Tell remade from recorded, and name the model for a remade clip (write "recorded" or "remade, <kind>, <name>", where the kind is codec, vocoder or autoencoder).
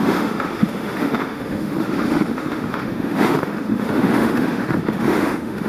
remade, autoencoder, DAC-VAE